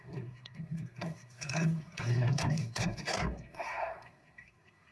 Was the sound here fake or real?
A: fake